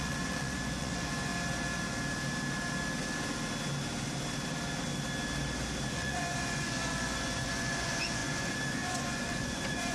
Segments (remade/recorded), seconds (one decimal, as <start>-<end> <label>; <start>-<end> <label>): 0.0-1.3 remade; 1.3-5.9 recorded; 5.9-9.9 remade